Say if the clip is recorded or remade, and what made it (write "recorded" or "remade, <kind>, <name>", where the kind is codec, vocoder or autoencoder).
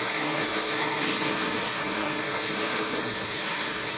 remade, codec, SNAC